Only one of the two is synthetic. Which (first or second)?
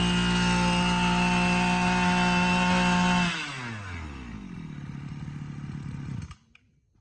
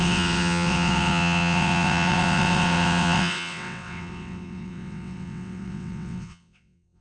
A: second